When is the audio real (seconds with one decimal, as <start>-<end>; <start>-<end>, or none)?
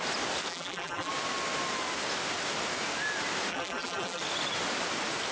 0.0-0.5; 1.1-3.5; 4.2-5.3